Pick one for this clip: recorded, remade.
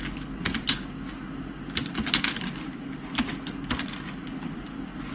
recorded